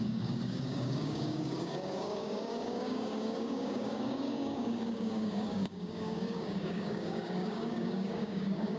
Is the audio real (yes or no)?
no